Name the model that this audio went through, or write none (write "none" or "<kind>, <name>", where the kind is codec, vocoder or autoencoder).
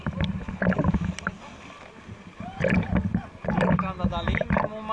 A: none